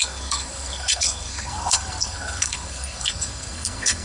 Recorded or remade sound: remade